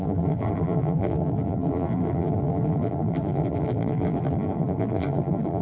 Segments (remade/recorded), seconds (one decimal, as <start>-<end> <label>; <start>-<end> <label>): 0.0-5.6 remade